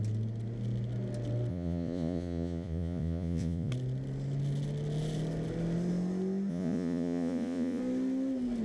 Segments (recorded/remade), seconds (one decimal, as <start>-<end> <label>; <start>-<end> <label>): 0.0-1.5 recorded; 1.5-3.7 remade; 3.7-6.5 recorded; 6.5-7.8 remade; 7.8-8.6 recorded